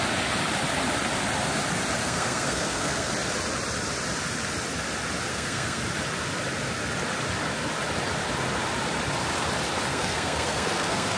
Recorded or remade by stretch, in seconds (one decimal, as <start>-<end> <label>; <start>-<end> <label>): 0.0-2.0 recorded; 2.0-3.1 remade; 3.1-5.3 recorded; 5.3-5.8 remade; 5.8-9.9 recorded; 9.9-11.2 remade